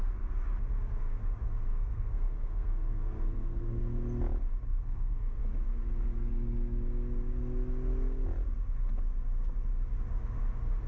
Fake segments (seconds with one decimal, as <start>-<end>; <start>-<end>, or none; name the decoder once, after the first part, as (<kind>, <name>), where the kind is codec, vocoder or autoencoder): 1.7-3.8 (codec, SNAC); 4.7-5.4